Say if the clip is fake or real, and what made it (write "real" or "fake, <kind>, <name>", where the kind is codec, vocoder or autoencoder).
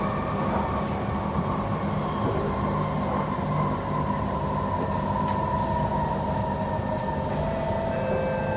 real